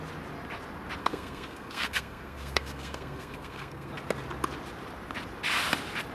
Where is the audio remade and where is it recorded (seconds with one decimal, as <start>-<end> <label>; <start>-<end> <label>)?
0.0-1.0 recorded; 1.0-3.9 remade; 3.9-6.1 recorded